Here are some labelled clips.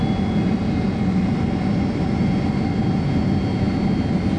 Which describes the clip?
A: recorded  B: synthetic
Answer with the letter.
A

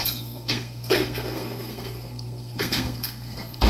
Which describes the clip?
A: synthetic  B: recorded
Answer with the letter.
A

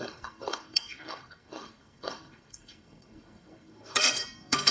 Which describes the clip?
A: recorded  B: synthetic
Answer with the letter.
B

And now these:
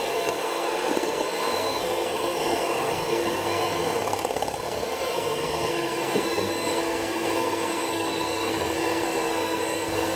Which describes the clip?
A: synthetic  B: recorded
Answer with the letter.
A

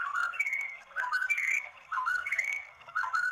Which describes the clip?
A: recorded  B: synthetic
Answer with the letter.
B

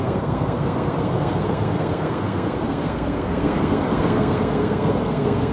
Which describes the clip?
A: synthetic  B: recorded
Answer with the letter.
A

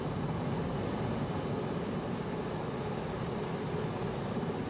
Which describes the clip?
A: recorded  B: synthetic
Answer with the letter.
A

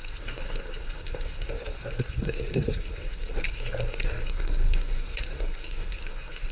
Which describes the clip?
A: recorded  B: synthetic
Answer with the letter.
B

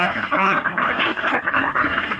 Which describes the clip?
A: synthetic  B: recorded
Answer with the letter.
A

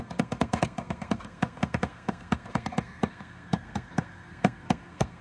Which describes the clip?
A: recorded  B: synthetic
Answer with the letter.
B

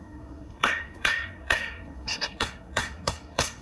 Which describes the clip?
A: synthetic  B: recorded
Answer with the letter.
A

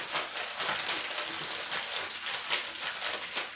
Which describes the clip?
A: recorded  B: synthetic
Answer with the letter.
A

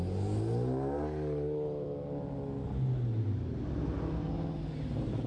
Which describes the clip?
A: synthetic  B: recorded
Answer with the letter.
B